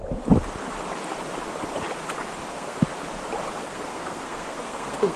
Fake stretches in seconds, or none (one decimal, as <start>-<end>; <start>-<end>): 2.5-2.9; 3.6-5.2

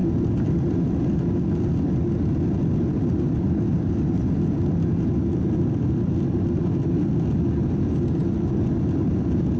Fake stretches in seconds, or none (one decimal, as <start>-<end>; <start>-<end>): none

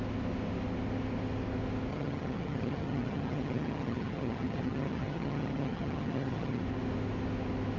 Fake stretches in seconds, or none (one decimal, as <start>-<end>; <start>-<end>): 1.9-6.6

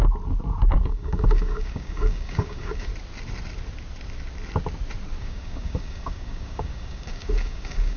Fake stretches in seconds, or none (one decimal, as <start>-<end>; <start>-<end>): 0.8-2.9; 5.2-8.0

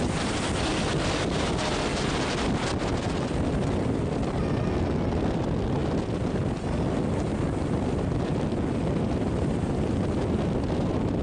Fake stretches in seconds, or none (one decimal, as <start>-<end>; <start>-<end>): none